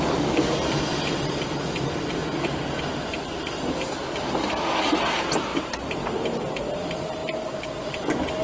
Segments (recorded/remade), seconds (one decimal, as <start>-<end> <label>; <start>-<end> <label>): 0.0-8.4 recorded

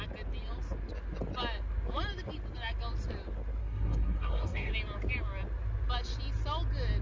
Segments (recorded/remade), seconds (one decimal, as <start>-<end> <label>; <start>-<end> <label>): 0.0-3.6 recorded; 3.6-4.7 remade; 4.7-7.0 recorded

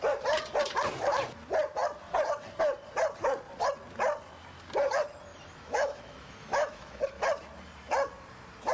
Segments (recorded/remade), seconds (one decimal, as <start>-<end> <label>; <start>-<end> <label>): 0.0-5.3 recorded; 5.3-7.0 remade; 7.0-8.7 recorded

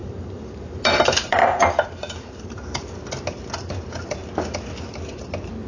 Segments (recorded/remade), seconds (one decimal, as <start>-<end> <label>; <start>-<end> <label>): 0.0-2.8 remade; 2.8-5.7 recorded

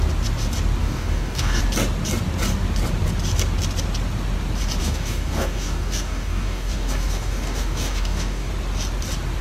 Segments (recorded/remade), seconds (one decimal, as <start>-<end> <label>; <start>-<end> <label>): 0.0-0.8 recorded; 0.8-1.6 remade; 1.6-4.8 recorded; 4.8-8.5 remade; 8.5-9.4 recorded

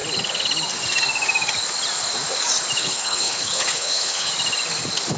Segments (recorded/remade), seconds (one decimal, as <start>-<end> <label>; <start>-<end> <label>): 0.0-2.8 recorded; 2.8-4.3 remade; 4.3-5.2 recorded